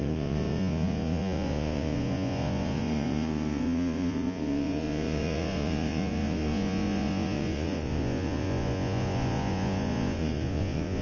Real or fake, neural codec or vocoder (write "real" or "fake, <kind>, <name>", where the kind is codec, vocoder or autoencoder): fake, vocoder, Vocos